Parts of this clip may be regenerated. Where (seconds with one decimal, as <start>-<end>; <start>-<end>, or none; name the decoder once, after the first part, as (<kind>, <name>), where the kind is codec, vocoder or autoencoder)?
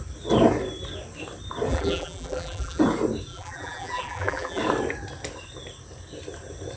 1.7-2.8 (vocoder, BigVGAN v2); 3.3-4.6